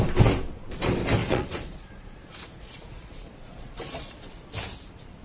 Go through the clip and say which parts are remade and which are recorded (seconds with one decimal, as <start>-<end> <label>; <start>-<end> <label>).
0.0-1.2 recorded; 1.2-4.3 remade; 4.3-5.2 recorded

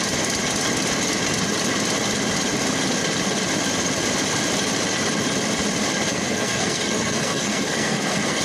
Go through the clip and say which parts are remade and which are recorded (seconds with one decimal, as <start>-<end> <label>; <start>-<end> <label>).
0.0-6.1 recorded; 6.1-8.4 remade

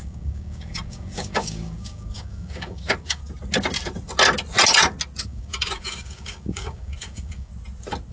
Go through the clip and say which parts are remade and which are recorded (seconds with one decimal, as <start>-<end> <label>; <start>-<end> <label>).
0.0-3.2 remade; 3.2-5.2 recorded; 5.2-7.5 remade; 7.5-8.1 recorded

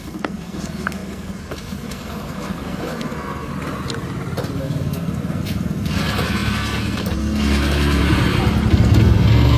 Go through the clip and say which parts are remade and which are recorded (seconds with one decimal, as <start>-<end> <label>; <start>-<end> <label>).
0.0-3.5 remade; 3.5-4.6 recorded; 4.6-8.0 remade; 8.0-8.7 recorded; 8.7-9.6 remade

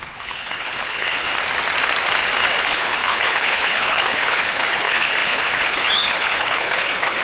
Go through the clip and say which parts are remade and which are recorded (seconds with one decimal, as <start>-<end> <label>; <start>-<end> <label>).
0.0-1.3 remade; 1.3-2.6 recorded; 2.6-7.2 remade